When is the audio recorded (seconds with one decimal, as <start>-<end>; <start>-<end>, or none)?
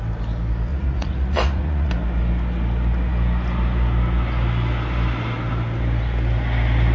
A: 0.0-0.7; 1.9-6.9